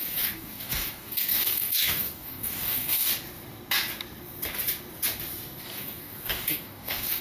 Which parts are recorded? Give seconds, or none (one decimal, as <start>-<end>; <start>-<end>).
3.1-5.6